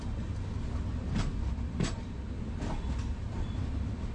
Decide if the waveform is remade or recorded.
recorded